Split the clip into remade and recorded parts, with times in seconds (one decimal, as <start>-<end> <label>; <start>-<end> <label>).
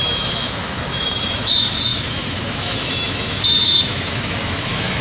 0.0-5.0 remade